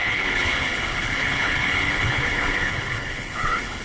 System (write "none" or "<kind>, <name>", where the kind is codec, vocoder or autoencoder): codec, HILCodec